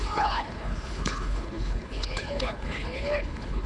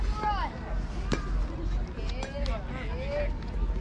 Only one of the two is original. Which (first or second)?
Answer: second